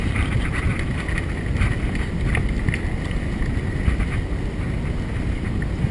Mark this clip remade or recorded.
recorded